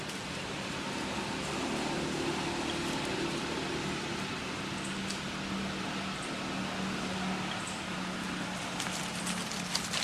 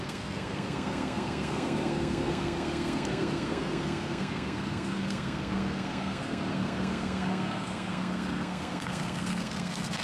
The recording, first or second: first